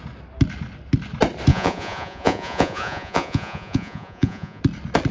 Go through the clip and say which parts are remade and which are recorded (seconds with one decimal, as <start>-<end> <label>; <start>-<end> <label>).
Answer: 0.0-1.5 recorded; 1.5-4.6 remade; 4.6-5.1 recorded